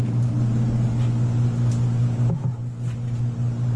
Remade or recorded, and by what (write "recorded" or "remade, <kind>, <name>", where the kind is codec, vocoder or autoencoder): recorded